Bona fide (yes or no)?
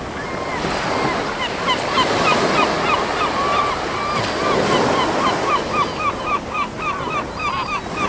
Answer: yes